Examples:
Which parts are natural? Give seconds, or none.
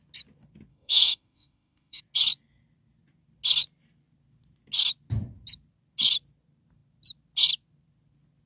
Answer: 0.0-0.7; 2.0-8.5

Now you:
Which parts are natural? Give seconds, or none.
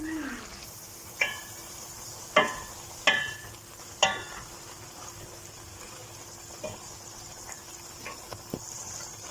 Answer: 0.0-0.5; 1.8-9.3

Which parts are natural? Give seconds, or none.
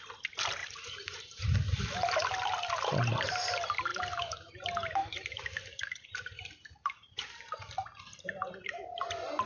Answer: 0.0-0.6; 1.5-3.9; 4.5-5.0; 7.6-9.5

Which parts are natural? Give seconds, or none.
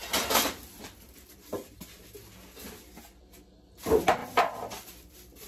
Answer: 1.4-4.2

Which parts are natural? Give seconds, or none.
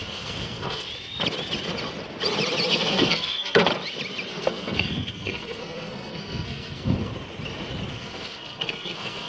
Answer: 0.9-2.7; 3.7-4.3; 7.1-7.9